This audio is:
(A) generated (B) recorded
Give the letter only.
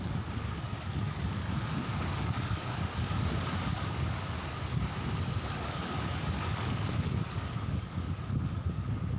A